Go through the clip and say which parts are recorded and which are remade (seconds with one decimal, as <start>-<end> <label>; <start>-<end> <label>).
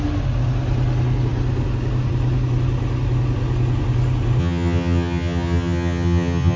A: 0.0-4.4 recorded; 4.4-6.6 remade